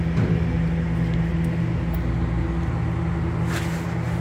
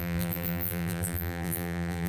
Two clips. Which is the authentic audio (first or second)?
first